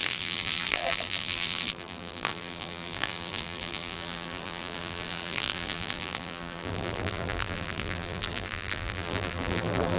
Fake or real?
fake